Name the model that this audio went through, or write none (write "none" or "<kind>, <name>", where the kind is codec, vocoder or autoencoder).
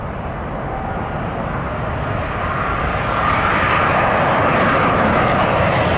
none